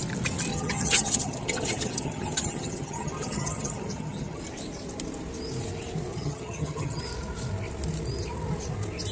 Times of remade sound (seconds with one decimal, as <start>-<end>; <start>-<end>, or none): 0.5-4.4; 6.1-7.0